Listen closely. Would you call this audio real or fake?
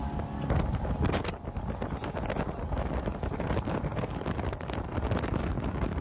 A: real